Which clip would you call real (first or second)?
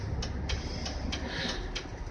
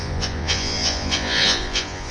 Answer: first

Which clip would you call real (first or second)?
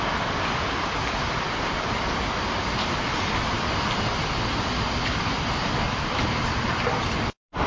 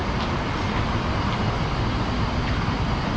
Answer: second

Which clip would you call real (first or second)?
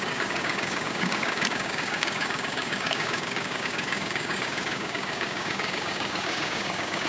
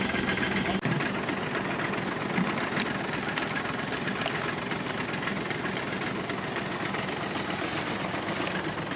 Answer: second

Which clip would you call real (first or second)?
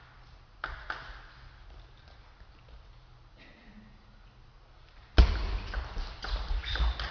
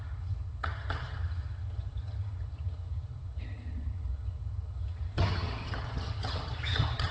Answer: first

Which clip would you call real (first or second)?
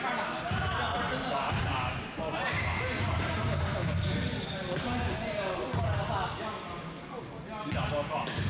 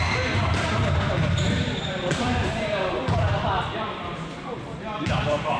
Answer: first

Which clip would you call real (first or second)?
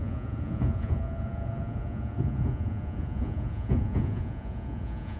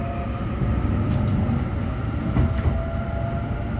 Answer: second